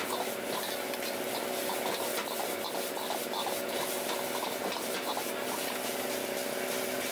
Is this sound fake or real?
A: real